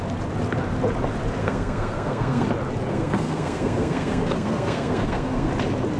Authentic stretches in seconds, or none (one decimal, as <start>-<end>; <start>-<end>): 0.0-1.4; 2.5-2.9; 5.5-6.0